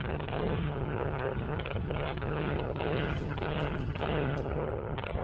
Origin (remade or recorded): remade